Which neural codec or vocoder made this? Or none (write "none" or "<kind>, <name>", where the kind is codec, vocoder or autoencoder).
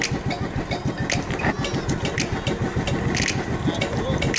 none